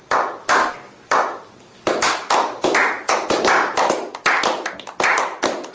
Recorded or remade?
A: recorded